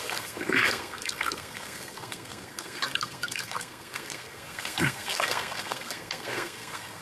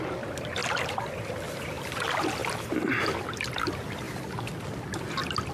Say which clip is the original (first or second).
second